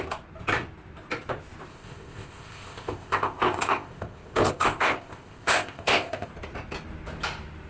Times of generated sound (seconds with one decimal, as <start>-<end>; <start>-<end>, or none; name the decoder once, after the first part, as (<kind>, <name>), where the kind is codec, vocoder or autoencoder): 1.7-6.3 (codec, ZipCodec)